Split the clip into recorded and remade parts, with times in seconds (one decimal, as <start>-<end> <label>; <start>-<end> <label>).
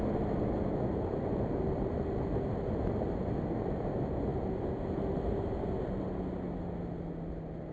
0.0-7.7 recorded